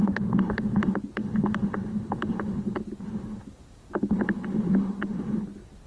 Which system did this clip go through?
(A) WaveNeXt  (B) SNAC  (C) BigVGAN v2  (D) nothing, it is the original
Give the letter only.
D